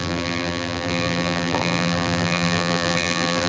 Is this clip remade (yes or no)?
yes